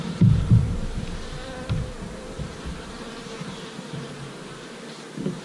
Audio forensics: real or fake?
fake